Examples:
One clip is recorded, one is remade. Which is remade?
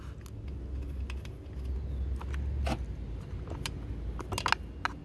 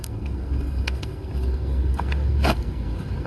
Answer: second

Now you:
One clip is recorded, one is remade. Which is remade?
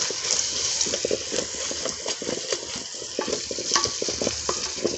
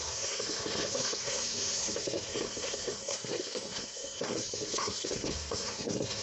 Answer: second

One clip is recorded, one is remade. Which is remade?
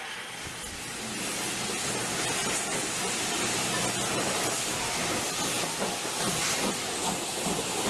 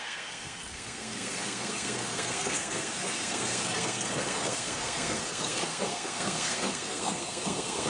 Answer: second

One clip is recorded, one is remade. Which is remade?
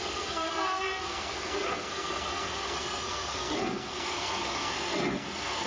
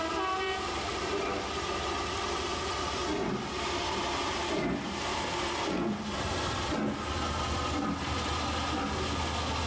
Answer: first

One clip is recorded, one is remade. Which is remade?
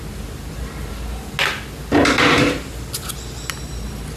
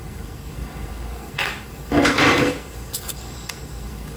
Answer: second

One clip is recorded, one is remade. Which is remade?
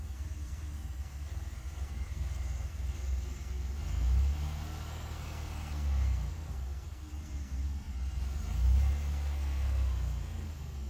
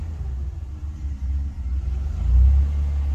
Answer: first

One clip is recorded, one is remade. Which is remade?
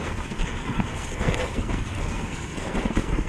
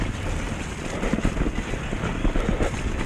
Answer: first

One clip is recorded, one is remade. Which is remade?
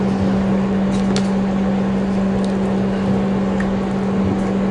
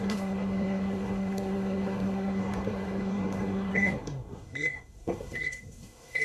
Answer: second